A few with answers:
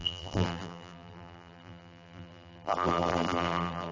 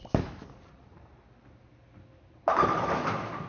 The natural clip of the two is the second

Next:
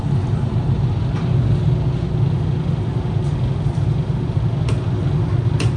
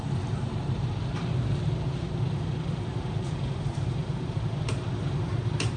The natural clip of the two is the first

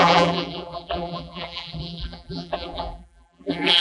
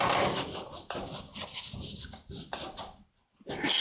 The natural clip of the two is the second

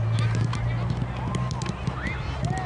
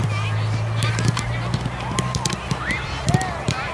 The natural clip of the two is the first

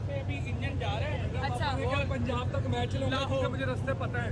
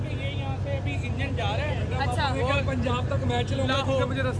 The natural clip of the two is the second